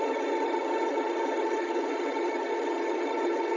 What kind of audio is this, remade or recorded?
remade